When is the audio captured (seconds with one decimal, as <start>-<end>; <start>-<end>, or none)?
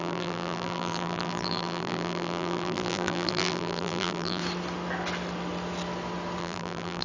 4.4-6.4